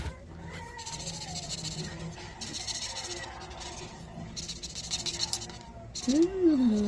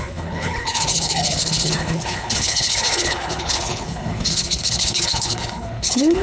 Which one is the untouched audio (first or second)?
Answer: first